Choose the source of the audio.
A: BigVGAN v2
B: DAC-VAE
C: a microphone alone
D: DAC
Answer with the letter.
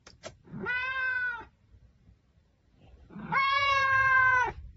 A